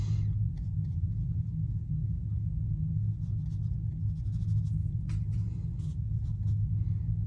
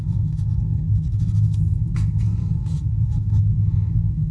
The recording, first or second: first